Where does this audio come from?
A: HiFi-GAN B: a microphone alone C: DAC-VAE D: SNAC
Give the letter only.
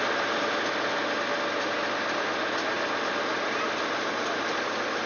B